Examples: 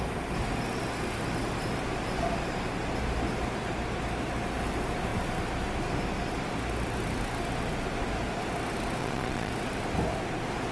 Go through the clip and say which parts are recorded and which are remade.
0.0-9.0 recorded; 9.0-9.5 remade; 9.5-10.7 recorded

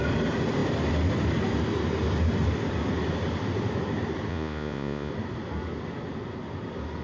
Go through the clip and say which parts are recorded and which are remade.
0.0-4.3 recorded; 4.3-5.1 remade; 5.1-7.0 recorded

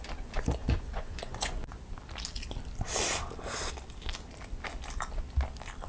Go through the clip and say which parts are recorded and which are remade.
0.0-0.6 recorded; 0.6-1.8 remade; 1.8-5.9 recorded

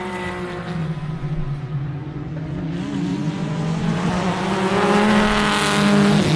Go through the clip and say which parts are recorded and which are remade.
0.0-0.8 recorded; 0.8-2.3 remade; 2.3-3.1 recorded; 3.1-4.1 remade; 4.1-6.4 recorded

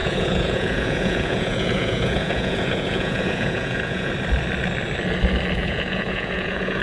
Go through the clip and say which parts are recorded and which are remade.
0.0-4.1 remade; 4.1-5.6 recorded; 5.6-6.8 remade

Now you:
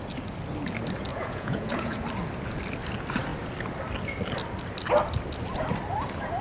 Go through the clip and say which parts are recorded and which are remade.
0.0-1.1 recorded; 1.1-2.0 remade; 2.0-6.4 recorded

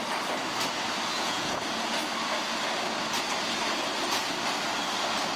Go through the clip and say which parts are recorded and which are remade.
0.0-1.1 recorded; 1.1-1.6 remade; 1.6-5.4 recorded

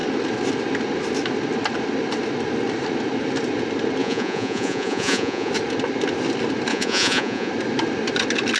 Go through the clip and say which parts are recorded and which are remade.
0.0-4.0 recorded; 4.0-5.5 remade; 5.5-6.7 recorded; 6.7-7.5 remade; 7.5-8.6 recorded